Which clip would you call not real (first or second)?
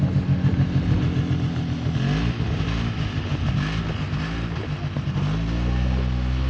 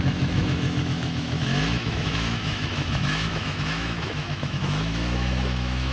second